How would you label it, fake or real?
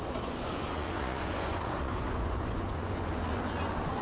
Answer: fake